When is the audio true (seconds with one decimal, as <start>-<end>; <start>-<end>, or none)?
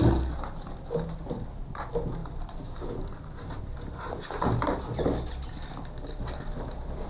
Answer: 0.0-7.1